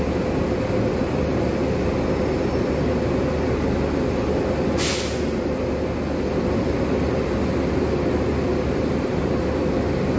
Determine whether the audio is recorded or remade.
recorded